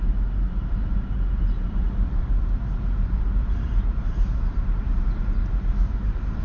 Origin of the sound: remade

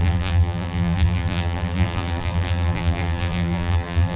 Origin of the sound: remade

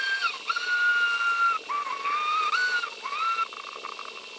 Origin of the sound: recorded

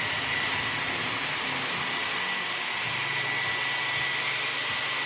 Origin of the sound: recorded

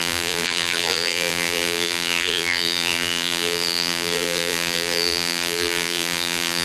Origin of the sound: remade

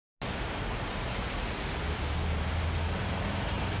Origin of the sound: recorded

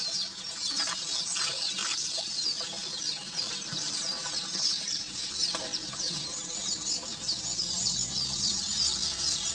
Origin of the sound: remade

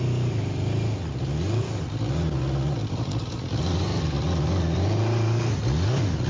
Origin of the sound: recorded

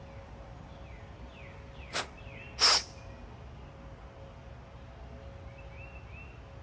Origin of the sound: recorded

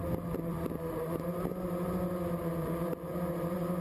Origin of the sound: remade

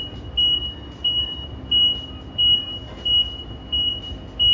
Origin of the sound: recorded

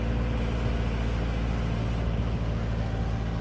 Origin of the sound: recorded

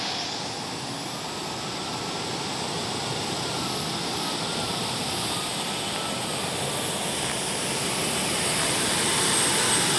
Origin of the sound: recorded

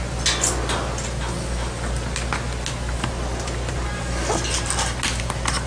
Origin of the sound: recorded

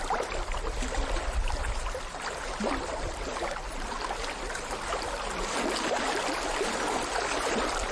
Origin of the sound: remade